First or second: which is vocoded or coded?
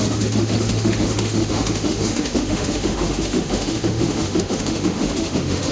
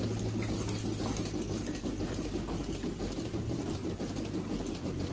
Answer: first